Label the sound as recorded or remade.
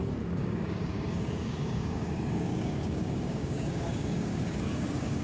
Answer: remade